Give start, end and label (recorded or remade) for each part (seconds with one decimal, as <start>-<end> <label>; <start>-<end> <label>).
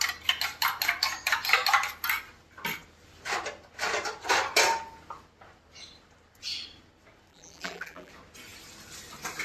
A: 0.0-7.3 recorded; 7.3-8.1 remade; 8.1-9.4 recorded